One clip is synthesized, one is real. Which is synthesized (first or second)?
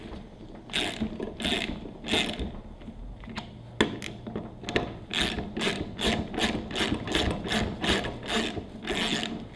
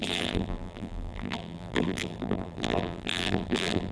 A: second